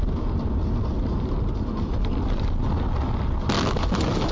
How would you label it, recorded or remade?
recorded